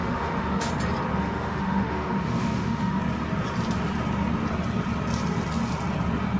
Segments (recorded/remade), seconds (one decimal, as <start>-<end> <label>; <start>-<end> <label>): 0.0-0.7 remade; 0.7-1.1 recorded; 1.1-3.0 remade; 3.0-6.4 recorded